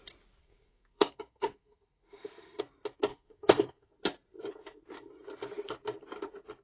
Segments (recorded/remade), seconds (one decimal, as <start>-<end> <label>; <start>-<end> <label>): 0.0-0.4 recorded; 0.4-2.6 remade; 2.6-3.1 recorded; 3.1-3.9 remade; 3.9-6.6 recorded